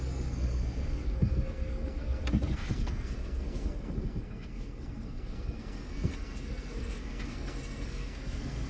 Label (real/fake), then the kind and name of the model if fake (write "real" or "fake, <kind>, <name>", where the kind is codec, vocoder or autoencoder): fake, codec, SNAC